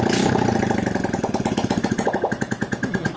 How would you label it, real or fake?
real